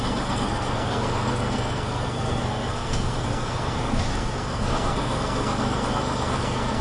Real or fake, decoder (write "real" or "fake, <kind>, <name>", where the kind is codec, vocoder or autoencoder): fake, codec, SNAC